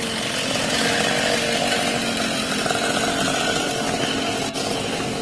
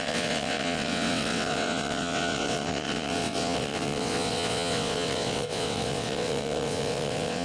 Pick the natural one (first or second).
first